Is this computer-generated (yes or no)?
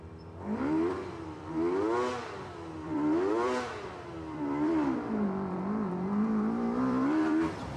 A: yes